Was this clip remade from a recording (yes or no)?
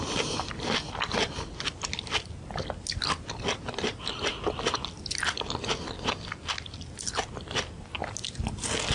no